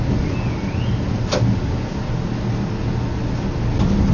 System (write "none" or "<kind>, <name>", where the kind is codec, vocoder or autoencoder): none